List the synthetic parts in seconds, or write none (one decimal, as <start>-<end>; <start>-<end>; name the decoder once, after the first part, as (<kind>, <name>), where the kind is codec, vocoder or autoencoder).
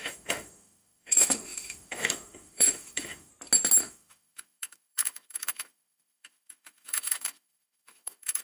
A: 0.0-3.3 (autoencoder, DAC-VAE); 3.8-8.4